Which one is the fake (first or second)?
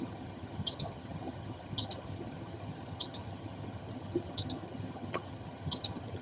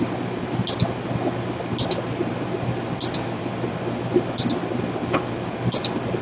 first